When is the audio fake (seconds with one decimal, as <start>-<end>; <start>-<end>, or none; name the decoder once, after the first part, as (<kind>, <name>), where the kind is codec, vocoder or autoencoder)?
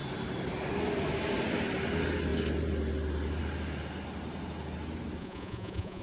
5.2-6.0 (vocoder, Vocos)